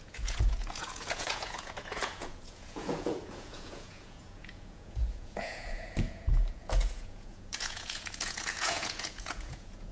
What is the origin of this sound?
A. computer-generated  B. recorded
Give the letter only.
A